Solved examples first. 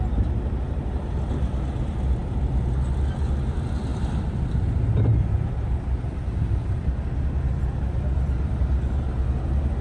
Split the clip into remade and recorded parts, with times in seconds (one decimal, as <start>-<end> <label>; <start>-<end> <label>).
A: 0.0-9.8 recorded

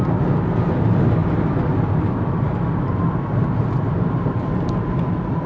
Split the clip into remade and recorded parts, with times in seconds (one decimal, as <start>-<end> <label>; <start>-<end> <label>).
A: 0.0-1.2 recorded; 1.2-4.5 remade; 4.5-5.5 recorded

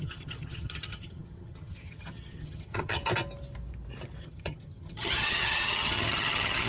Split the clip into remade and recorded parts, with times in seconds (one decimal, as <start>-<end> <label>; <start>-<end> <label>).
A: 0.0-3.0 remade; 3.0-4.2 recorded; 4.2-6.7 remade